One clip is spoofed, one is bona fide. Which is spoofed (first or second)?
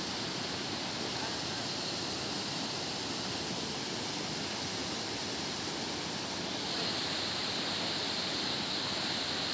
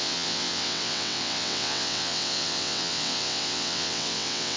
second